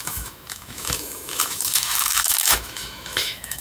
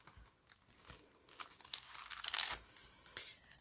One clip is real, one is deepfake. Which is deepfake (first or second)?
first